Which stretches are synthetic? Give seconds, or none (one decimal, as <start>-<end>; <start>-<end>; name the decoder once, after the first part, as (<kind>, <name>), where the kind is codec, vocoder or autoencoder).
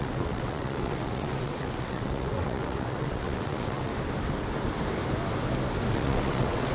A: 0.0-3.9 (vocoder, WaveNeXt); 5.9-6.7